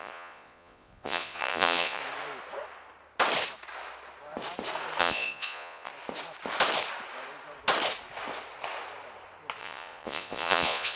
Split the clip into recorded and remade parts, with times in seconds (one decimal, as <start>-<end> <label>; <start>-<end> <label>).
0.0-2.0 remade; 2.0-5.0 recorded; 5.0-5.9 remade; 5.9-9.6 recorded; 9.6-11.0 remade